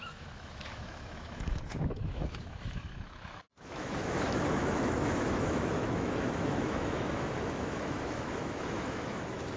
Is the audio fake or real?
fake